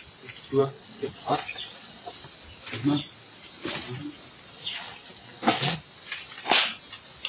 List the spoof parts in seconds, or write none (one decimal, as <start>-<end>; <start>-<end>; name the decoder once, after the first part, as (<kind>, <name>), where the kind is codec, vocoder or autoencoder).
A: 0.6-2.1 (vocoder, WaveNeXt); 4.5-5.8